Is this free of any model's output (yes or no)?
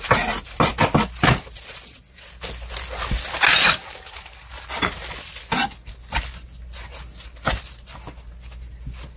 yes